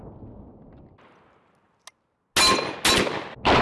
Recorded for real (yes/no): yes